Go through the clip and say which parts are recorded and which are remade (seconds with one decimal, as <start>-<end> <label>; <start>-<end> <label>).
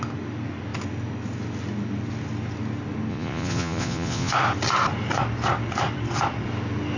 0.0-3.1 recorded; 3.1-4.3 remade; 4.3-7.0 recorded